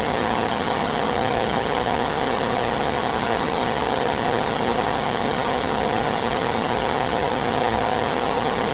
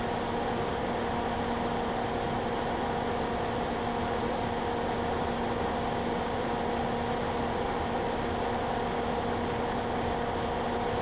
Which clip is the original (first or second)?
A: second